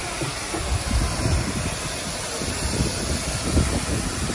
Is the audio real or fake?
fake